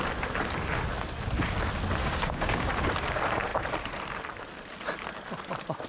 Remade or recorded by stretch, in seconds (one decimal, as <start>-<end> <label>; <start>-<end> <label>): 0.0-2.0 recorded; 2.0-2.7 remade; 2.7-5.9 recorded